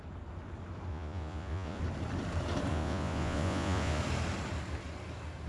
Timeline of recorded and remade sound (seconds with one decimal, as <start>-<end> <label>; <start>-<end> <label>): 0.0-0.9 recorded; 0.9-1.8 remade; 1.8-2.7 recorded; 2.7-4.0 remade; 4.0-5.5 recorded